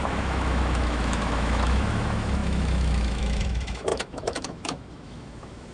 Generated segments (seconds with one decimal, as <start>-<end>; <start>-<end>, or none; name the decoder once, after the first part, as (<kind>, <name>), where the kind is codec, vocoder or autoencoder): 0.0-5.7 (autoencoder, DAC-VAE)